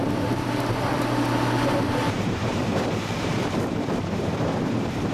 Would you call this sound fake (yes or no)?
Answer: yes